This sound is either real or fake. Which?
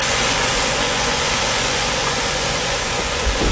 fake